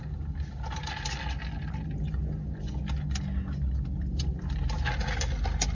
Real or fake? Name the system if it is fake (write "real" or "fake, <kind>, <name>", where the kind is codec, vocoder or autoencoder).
real